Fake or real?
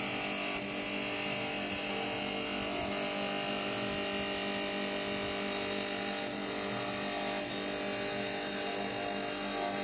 real